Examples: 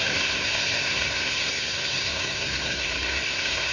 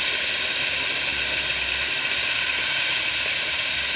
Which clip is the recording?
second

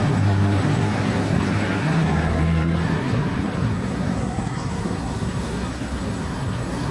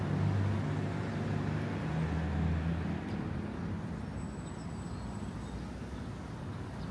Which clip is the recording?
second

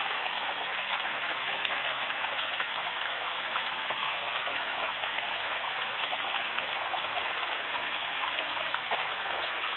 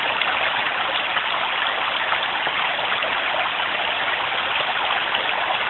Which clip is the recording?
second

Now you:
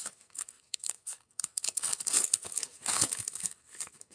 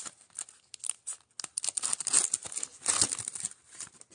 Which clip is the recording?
second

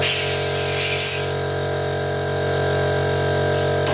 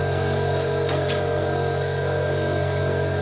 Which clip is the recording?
first